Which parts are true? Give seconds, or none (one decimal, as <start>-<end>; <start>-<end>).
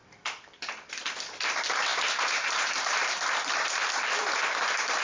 0.7-1.9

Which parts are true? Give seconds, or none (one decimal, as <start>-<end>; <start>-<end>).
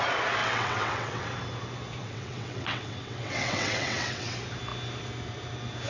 0.0-0.4; 1.3-2.0; 4.3-5.9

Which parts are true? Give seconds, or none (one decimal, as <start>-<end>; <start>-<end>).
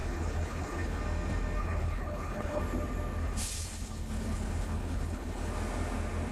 1.0-1.6; 2.6-3.2; 5.5-6.3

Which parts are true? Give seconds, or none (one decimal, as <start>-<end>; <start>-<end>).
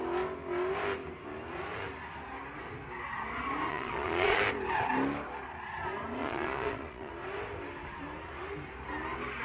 0.0-3.7; 4.4-6.2; 7.1-9.4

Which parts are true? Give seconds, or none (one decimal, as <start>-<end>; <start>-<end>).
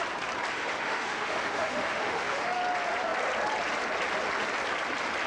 0.0-0.5; 2.6-5.3